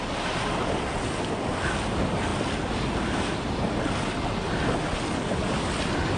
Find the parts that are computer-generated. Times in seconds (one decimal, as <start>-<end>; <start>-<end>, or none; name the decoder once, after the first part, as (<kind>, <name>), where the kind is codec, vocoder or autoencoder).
none